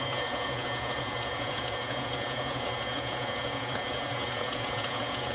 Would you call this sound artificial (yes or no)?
yes